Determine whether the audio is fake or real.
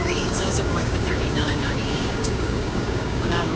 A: fake